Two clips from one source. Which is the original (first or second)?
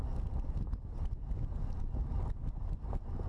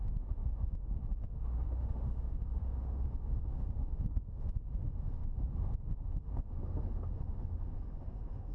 first